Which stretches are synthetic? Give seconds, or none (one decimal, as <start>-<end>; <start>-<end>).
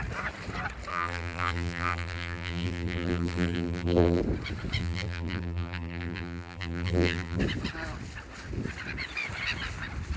0.9-4.2; 4.8-7.4